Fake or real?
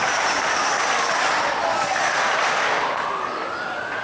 real